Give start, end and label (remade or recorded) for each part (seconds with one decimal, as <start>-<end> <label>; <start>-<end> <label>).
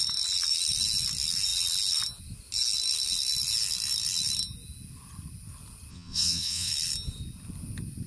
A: 0.0-5.9 recorded; 5.9-6.7 remade; 6.7-8.1 recorded